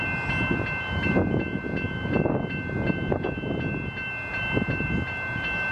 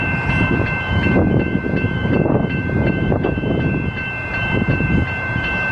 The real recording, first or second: first